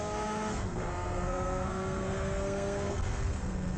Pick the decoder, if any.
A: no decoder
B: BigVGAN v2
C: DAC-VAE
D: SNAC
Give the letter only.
D